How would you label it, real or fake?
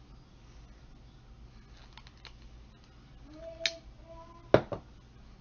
real